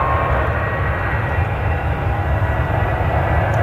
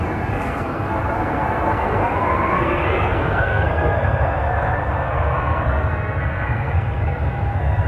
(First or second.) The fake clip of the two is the second